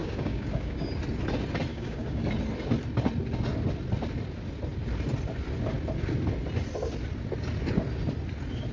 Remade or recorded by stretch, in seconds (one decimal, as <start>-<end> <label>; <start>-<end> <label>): 0.0-0.9 remade; 0.9-1.7 recorded; 1.7-2.3 remade; 2.3-8.7 recorded